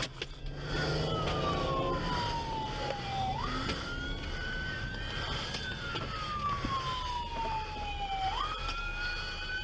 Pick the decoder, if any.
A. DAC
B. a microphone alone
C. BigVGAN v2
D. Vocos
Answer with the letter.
B